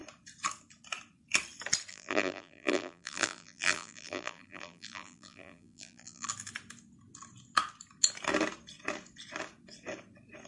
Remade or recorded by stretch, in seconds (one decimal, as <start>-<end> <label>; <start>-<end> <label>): 0.0-1.9 recorded; 1.9-6.3 remade; 6.3-10.5 recorded